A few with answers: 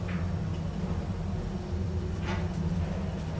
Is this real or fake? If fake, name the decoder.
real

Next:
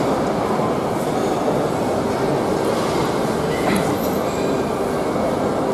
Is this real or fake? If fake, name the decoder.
real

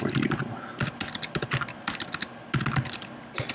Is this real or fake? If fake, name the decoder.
real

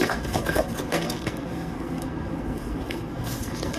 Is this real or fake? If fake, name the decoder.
fake, codec, SNAC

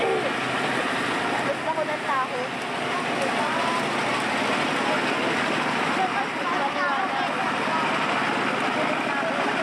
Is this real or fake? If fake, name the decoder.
real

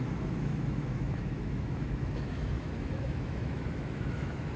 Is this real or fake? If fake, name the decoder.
fake, autoencoder, DAC-VAE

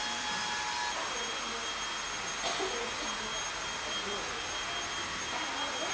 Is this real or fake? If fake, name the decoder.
real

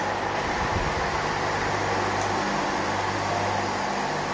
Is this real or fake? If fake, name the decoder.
real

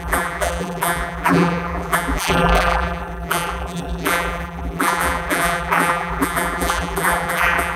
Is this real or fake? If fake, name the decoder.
fake, vocoder, BigVGAN v2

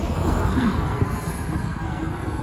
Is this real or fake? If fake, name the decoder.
fake, codec, SNAC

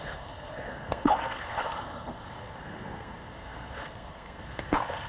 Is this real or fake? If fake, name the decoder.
fake, codec, SNAC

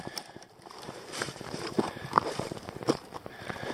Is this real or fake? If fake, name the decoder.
fake, vocoder, BigVGAN v2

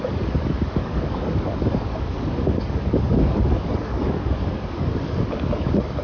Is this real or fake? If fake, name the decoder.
fake, codec, DAC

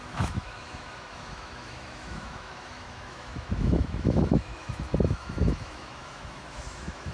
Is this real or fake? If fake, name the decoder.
fake, autoencoder, DAC-VAE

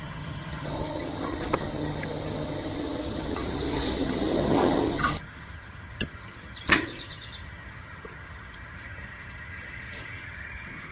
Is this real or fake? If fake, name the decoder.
fake, vocoder, HiFi-GAN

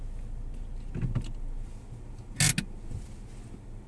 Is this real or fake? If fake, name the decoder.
real